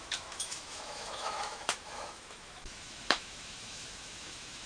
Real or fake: fake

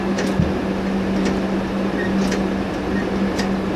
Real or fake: real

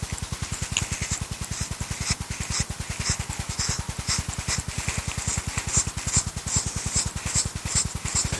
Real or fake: real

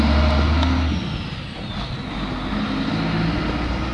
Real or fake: real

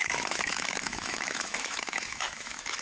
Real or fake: fake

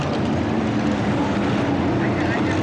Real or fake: real